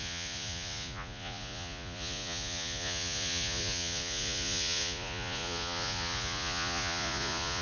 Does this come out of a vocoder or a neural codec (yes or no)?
yes